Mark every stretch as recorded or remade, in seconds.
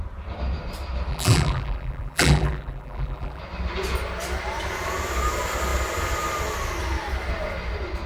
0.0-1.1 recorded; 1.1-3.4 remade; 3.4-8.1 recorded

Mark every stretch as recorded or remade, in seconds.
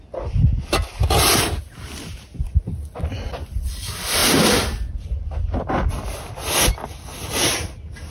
0.0-8.1 recorded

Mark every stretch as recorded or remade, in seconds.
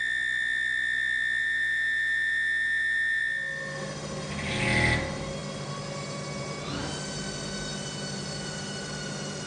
0.0-1.4 recorded; 1.4-3.2 remade; 3.2-9.5 recorded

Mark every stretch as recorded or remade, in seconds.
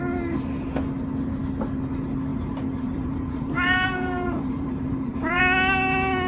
0.0-2.3 recorded; 2.3-5.4 remade; 5.4-6.3 recorded